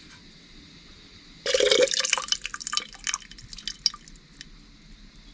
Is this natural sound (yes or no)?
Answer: yes